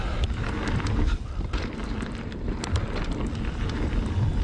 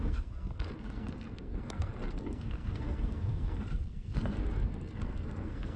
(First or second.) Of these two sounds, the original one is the first